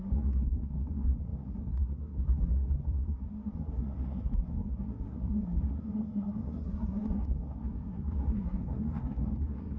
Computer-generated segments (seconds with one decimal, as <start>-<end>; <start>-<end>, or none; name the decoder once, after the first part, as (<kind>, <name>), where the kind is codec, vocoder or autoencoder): 0.0-9.8 (codec, SNAC)